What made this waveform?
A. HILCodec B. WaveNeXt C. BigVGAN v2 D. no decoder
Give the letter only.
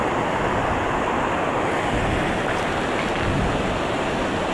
D